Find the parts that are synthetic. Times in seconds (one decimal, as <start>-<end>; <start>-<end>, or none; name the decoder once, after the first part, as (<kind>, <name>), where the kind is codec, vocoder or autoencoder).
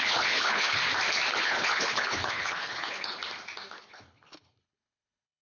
0.0-0.8 (codec, HILCodec); 1.4-3.2; 3.8-5.4